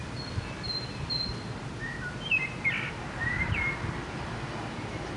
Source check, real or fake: real